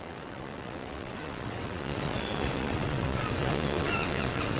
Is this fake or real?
fake